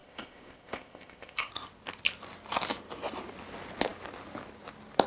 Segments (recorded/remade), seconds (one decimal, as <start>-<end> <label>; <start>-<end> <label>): 0.0-1.5 remade; 1.5-5.1 recorded